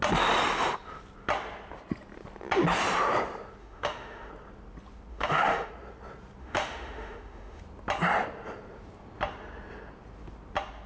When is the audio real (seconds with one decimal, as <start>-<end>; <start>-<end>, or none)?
0.0-3.6; 4.3-5.1; 5.7-6.4; 7.6-10.9